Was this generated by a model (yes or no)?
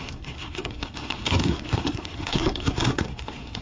yes